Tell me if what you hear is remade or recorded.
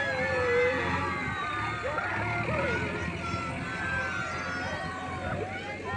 recorded